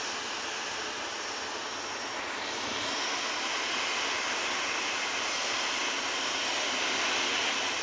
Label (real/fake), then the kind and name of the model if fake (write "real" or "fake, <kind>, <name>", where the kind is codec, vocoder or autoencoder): real